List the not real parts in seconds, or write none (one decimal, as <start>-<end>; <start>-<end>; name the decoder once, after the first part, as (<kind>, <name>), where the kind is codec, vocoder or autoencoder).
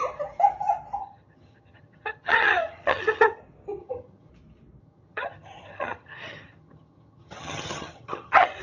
1.0-3.4 (vocoder, HiFi-GAN); 3.8-4.3; 4.8-8.6